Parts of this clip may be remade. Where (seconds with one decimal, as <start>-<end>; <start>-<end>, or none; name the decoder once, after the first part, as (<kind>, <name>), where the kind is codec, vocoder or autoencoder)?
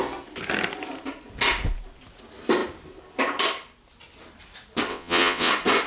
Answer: 4.9-5.5 (vocoder, WaveNeXt)